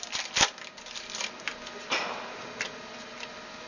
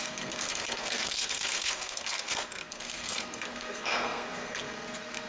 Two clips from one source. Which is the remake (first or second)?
second